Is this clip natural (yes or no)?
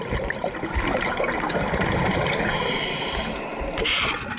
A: yes